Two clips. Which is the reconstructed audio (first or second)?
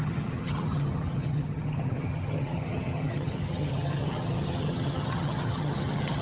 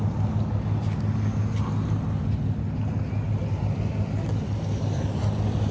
first